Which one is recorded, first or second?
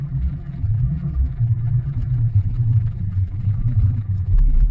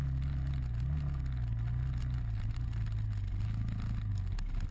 second